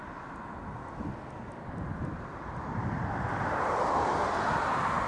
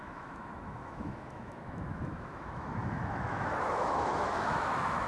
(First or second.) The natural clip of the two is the first